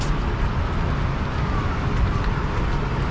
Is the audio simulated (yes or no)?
no